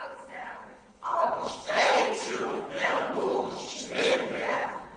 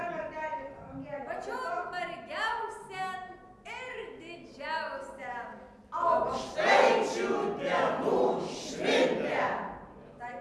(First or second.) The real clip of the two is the second